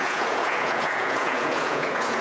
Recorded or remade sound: remade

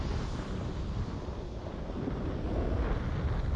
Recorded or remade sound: recorded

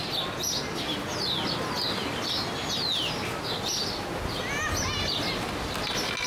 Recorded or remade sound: recorded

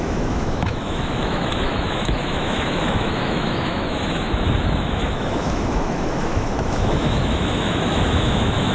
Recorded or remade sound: remade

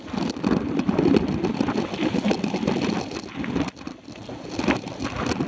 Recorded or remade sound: recorded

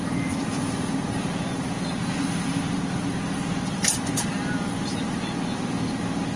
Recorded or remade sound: recorded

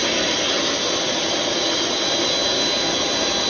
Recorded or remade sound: recorded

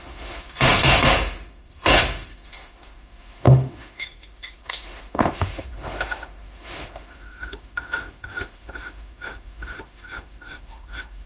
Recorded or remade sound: remade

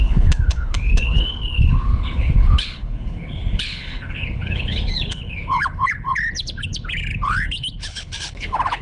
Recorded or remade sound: remade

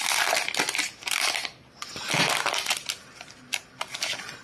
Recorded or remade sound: recorded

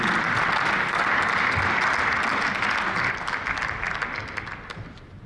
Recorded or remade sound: recorded